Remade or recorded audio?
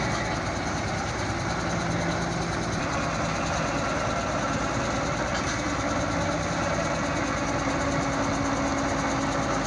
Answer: recorded